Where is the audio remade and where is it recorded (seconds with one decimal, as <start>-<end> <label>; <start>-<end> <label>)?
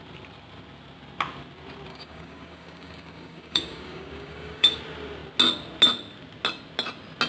0.0-1.9 recorded; 1.9-4.8 remade; 4.8-7.3 recorded